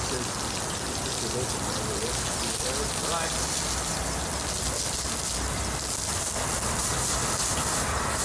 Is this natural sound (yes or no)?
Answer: yes